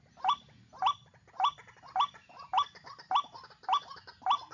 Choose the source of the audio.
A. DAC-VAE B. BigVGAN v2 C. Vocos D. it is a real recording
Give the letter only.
D